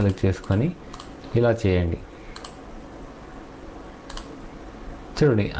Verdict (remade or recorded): recorded